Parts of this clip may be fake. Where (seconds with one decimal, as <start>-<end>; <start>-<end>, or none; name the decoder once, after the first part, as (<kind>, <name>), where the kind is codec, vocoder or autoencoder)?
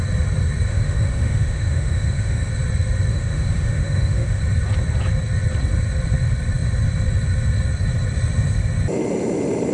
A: 0.7-2.5 (autoencoder, DAC-VAE); 3.1-4.4